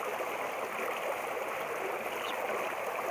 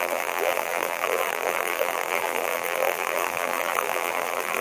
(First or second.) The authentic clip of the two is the first